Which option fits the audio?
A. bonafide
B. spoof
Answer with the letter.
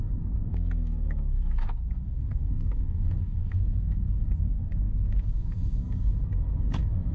B